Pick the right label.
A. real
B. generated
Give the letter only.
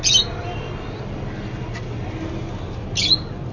A